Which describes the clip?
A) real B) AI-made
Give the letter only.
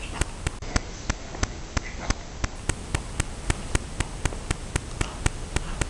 A